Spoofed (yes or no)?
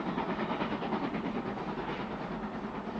no